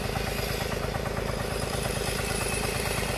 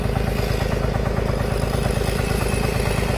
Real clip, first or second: second